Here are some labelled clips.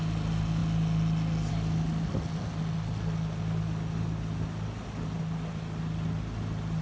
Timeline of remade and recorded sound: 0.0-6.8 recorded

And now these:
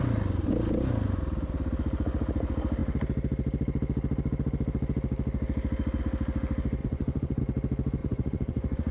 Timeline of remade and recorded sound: 0.0-6.8 recorded; 6.8-7.4 remade; 7.4-8.0 recorded; 8.0-8.9 remade

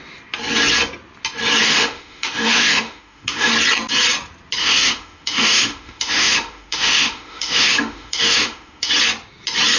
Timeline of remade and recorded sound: 0.0-1.6 recorded; 1.6-3.5 remade; 3.5-4.6 recorded; 4.6-8.9 remade; 8.9-9.8 recorded

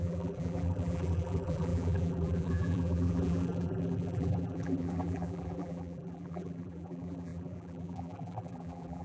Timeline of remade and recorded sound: 0.0-9.0 remade

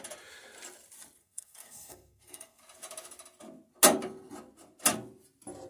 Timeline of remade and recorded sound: 0.0-1.2 recorded; 1.2-2.6 remade; 2.6-5.7 recorded